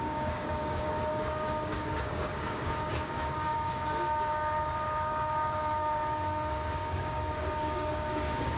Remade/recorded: remade